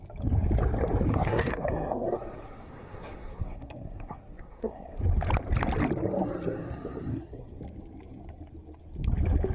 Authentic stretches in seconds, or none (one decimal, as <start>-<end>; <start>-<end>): 0.0-1.1; 5.0-7.1; 7.6-9.5